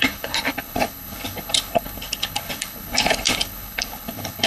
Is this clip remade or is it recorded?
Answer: remade